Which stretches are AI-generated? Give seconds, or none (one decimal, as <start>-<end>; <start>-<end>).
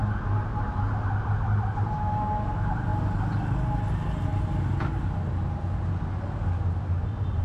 0.0-0.6